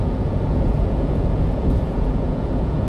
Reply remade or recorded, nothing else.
remade